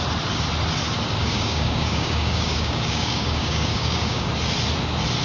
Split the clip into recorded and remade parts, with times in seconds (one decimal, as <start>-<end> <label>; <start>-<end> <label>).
0.0-1.2 recorded; 1.2-4.3 remade; 4.3-5.2 recorded